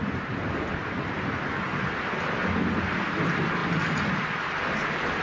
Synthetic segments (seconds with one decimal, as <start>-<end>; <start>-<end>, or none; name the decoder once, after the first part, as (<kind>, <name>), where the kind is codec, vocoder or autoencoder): 3.6-4.3 (vocoder, BigVGAN v2)